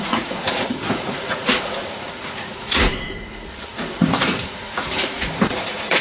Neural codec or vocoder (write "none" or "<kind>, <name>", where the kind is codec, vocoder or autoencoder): vocoder, Vocos